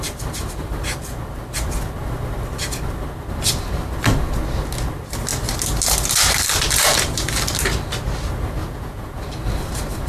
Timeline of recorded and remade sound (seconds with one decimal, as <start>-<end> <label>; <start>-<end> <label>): 0.0-8.6 recorded; 8.6-9.2 remade; 9.2-10.1 recorded